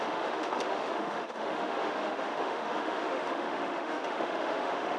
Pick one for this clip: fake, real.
fake